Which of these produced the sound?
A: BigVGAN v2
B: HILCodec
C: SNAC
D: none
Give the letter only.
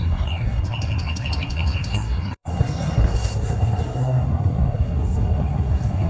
C